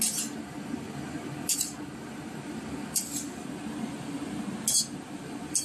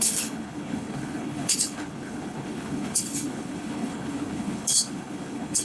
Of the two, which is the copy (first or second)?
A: second